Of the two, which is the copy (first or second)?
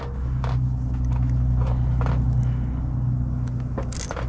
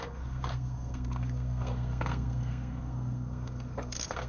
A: second